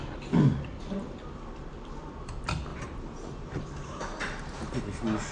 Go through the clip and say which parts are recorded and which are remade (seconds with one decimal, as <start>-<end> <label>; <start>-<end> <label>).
0.0-2.7 recorded; 2.7-4.8 remade; 4.8-5.3 recorded